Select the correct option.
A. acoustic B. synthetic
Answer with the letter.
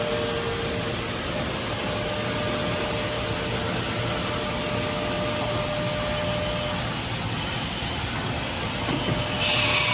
A